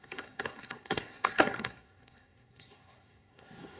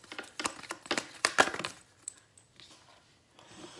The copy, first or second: first